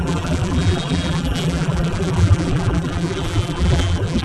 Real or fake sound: fake